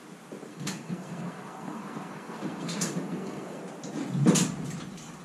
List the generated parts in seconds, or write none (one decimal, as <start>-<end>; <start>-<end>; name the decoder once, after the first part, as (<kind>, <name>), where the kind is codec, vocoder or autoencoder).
0.5-3.6 (codec, SNAC)